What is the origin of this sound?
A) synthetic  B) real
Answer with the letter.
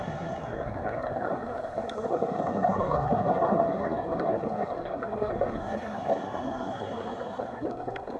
A